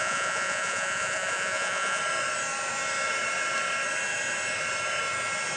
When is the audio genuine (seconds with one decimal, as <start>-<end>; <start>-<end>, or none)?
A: 2.0-5.6